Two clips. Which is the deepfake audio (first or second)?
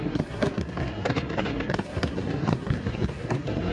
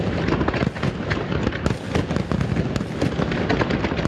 first